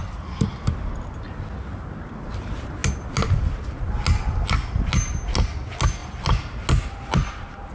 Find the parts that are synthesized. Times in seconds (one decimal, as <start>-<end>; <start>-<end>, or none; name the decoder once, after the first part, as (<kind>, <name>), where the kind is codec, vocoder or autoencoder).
none